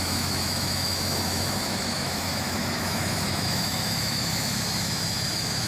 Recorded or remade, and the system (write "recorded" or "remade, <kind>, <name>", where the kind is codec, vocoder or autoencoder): remade, autoencoder, DAC-VAE